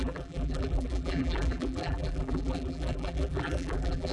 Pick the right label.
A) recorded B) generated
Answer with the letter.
B